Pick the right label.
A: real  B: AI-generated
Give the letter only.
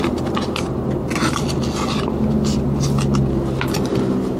A